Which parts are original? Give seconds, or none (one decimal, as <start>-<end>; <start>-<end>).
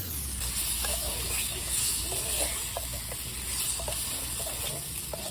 0.0-0.9; 2.0-5.3